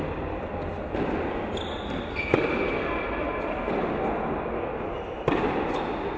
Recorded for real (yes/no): yes